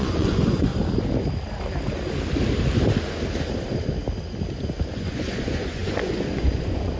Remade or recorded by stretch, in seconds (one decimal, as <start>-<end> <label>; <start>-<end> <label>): 0.0-0.7 remade; 0.7-4.9 recorded; 4.9-7.0 remade